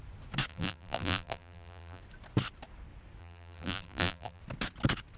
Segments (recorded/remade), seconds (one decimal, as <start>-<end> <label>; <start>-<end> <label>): 0.0-0.5 recorded; 0.5-2.0 remade; 2.0-3.2 recorded; 3.2-4.4 remade; 4.4-5.2 recorded